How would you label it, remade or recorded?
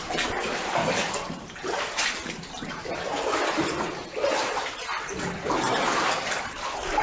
recorded